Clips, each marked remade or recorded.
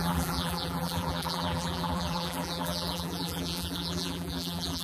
remade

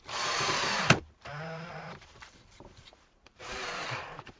remade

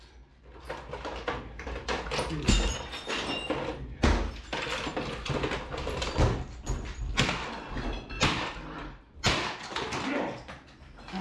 recorded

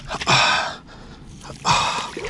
recorded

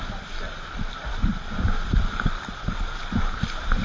remade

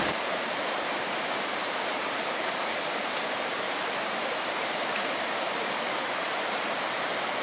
remade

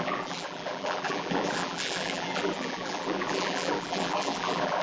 remade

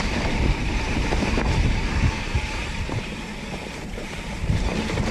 remade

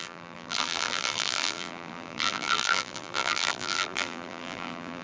remade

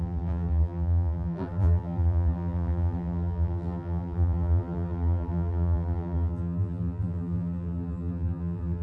remade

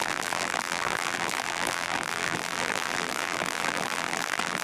remade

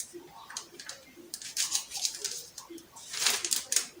recorded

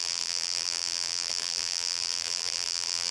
remade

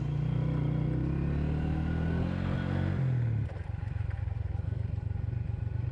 recorded